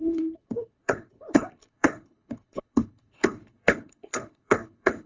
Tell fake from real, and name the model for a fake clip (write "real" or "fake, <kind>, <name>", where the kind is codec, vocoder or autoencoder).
fake, codec, HILCodec